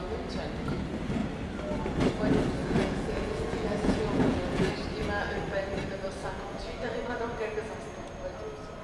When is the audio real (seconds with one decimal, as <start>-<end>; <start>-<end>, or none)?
0.0-2.6; 4.7-6.2; 6.9-8.8